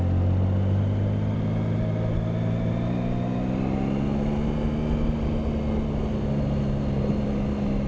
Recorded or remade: recorded